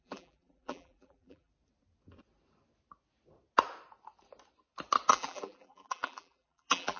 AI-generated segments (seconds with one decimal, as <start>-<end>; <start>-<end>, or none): 0.0-1.5; 5.1-7.0